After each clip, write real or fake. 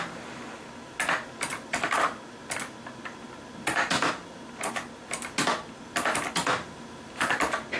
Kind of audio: real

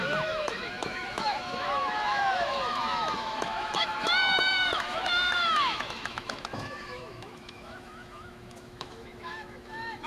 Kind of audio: fake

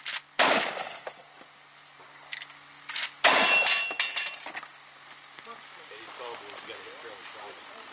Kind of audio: real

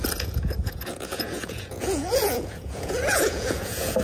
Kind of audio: fake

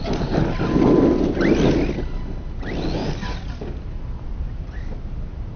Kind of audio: real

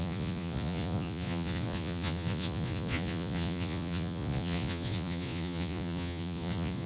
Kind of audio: fake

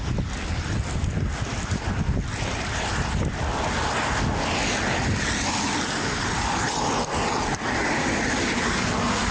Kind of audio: real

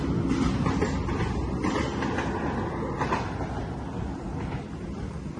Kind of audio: real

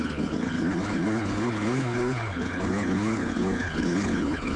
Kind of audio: fake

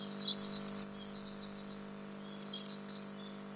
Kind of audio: real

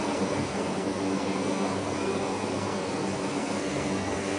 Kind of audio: fake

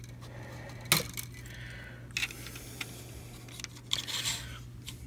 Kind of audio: real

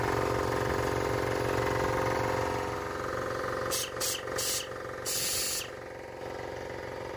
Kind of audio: real